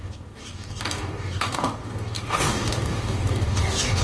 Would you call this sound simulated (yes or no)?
yes